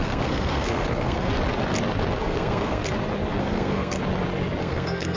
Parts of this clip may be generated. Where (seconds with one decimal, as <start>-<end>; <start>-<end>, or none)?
0.0-1.3; 2.2-2.8; 3.4-4.0; 4.6-5.2